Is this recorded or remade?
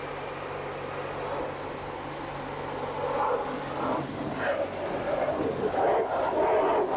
recorded